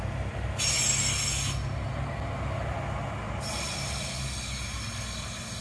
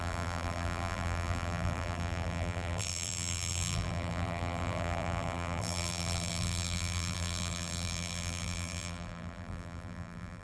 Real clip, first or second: first